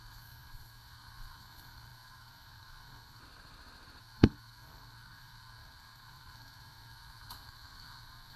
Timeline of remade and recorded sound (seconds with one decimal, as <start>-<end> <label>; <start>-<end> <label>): 0.0-3.2 remade; 3.2-4.0 recorded; 4.0-8.4 remade